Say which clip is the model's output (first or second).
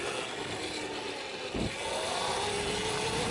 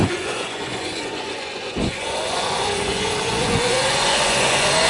second